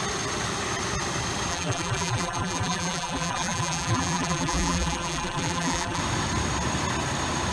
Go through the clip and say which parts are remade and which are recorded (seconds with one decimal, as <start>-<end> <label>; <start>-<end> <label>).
0.0-1.5 recorded; 1.5-6.0 remade; 6.0-7.5 recorded